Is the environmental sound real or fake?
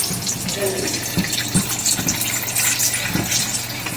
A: real